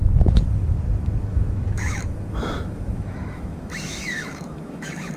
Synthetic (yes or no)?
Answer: yes